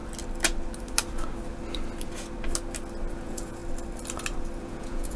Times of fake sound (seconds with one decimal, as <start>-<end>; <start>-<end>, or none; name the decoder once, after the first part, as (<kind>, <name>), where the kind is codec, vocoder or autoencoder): 3.1-3.6 (vocoder, Vocos); 4.6-5.2